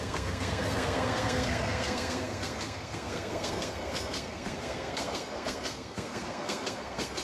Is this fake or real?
fake